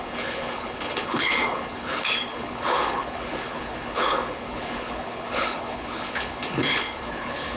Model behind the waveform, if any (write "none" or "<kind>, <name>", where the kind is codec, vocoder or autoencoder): codec, HILCodec